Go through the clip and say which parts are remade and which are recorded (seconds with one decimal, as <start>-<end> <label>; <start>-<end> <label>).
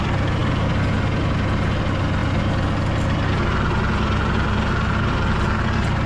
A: 0.0-6.1 recorded